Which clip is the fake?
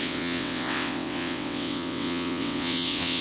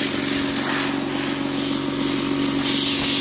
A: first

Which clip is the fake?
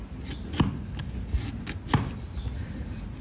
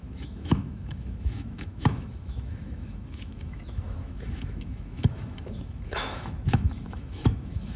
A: second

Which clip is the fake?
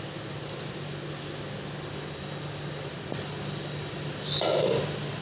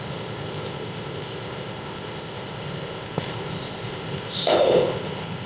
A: second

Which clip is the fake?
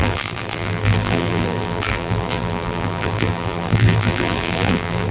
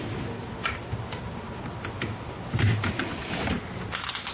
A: first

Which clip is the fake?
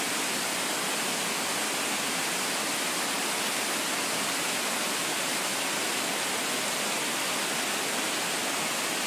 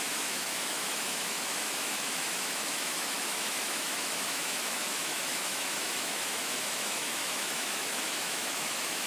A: second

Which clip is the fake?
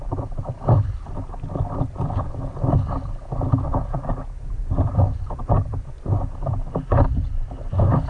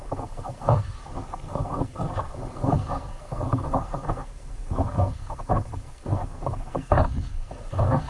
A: second